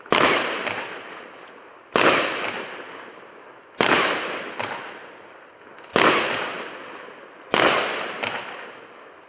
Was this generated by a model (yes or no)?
no